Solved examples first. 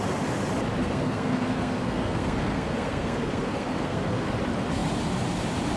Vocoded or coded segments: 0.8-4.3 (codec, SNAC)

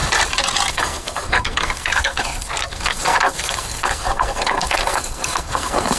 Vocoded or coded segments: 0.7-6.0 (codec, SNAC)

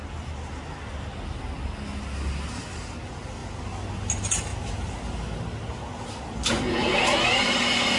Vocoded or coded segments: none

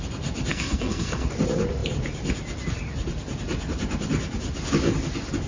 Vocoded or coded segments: 0.5-1.3 (codec, SNAC)

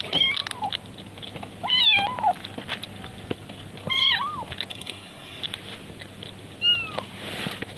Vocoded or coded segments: 4.7-5.4 (codec, SNAC)

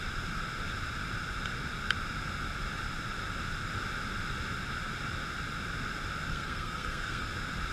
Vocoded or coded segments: 6.3-7.3 (codec, SNAC)

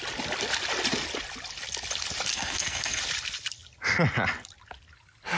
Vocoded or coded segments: 2.3-3.0 (codec, SNAC)

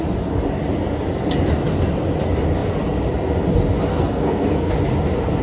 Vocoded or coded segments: 3.9-4.7 (codec, SNAC)